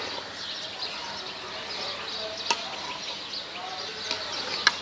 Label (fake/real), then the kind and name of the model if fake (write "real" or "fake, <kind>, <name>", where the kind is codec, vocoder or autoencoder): real